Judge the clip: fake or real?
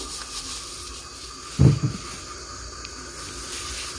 real